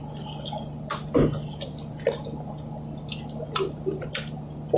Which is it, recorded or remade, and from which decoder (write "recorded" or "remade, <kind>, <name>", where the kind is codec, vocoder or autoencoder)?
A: recorded